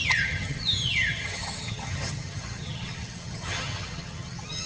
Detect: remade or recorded remade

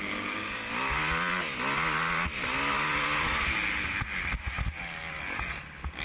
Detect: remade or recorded recorded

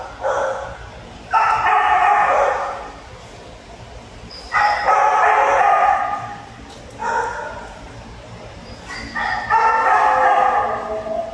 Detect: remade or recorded recorded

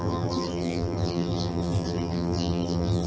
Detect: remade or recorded remade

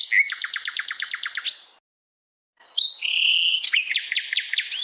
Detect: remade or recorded recorded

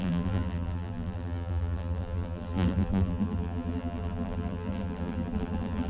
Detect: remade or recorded remade